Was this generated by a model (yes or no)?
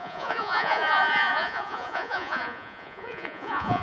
yes